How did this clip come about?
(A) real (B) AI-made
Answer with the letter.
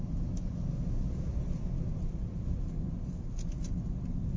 A